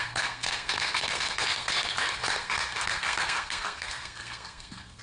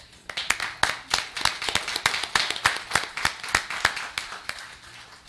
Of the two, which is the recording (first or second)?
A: second